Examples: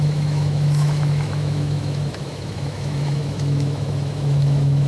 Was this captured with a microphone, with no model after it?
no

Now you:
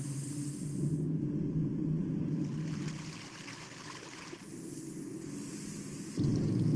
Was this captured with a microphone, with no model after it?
yes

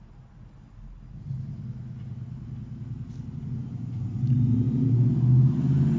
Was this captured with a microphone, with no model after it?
yes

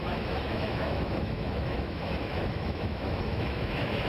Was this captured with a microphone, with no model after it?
no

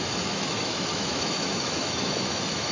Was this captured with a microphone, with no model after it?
no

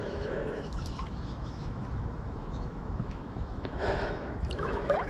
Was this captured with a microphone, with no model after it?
no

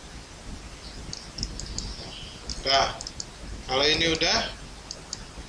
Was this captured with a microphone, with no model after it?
yes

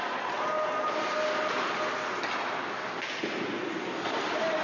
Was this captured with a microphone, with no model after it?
yes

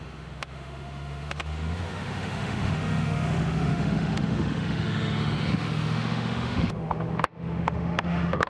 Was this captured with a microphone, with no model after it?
no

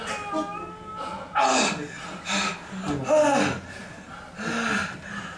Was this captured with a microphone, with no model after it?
yes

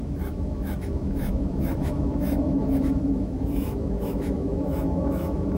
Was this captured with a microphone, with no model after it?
no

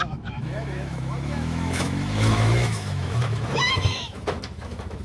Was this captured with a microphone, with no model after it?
no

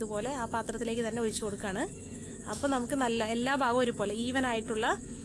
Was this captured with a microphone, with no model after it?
no